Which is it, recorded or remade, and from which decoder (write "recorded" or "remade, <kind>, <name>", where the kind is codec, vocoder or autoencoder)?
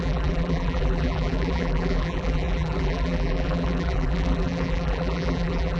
remade, vocoder, BigVGAN v2